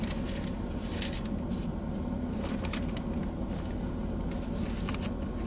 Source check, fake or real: real